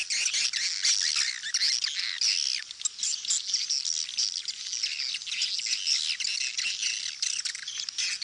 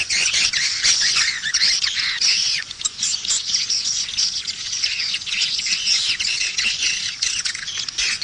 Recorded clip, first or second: first